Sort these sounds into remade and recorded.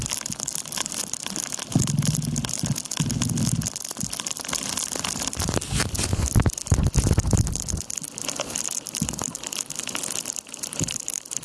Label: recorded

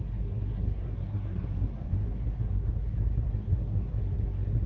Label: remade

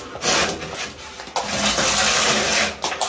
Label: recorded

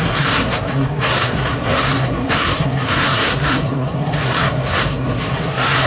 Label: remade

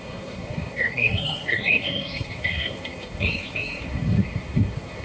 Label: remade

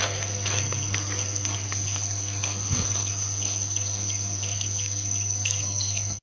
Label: remade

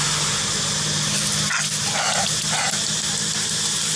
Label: recorded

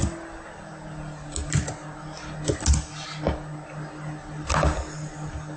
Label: recorded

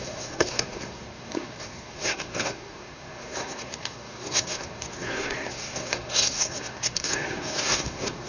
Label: remade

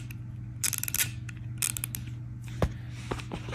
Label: recorded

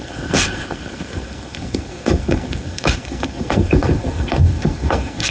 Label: remade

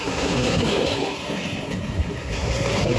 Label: remade